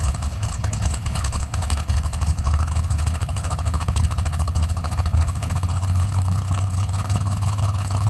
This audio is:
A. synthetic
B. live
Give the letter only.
A